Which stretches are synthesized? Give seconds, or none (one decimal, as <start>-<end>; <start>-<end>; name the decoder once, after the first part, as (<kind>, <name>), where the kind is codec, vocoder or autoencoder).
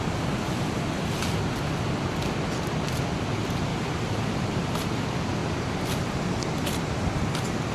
3.7-5.0 (vocoder, BigVGAN v2); 5.4-6.4